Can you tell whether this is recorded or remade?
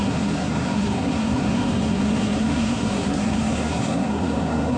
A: remade